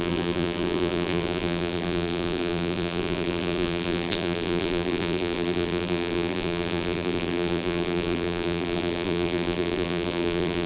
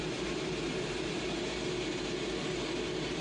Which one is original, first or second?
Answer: second